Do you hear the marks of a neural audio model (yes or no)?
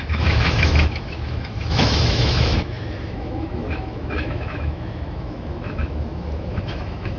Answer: yes